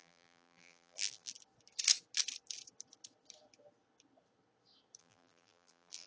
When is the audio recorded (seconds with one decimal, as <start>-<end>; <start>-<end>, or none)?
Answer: 1.3-5.0